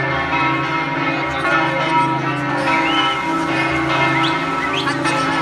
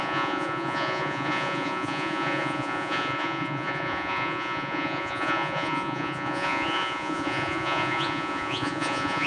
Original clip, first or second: first